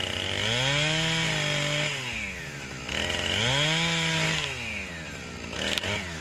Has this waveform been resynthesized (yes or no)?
no